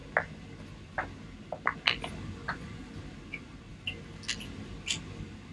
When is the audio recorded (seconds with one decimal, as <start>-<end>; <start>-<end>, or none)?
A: 0.0-2.4; 2.9-5.5